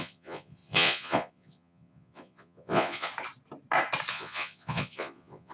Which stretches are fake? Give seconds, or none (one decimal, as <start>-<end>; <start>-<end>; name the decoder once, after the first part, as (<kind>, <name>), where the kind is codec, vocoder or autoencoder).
0.0-3.1 (vocoder, Vocos); 4.1-5.5